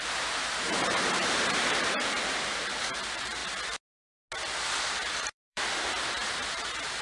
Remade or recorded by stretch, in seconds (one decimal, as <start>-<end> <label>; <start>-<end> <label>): 0.0-3.4 remade; 3.4-4.8 recorded; 4.8-7.0 remade